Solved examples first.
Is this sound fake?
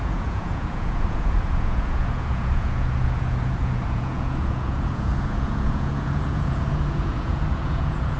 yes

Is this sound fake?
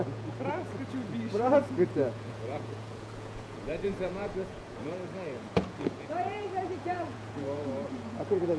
yes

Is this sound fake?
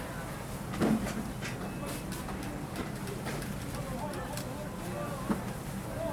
no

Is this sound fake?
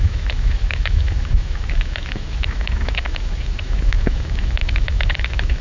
yes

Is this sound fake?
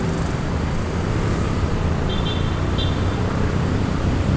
yes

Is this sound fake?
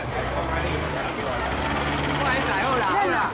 no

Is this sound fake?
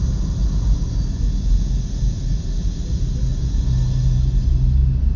no